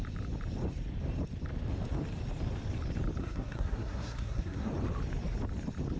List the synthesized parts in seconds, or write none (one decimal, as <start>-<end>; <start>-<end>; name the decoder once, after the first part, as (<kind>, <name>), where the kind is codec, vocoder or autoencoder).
3.2-4.7 (codec, SNAC)